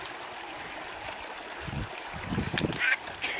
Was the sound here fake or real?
real